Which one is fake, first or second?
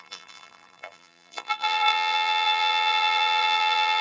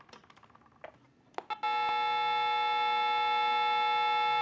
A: first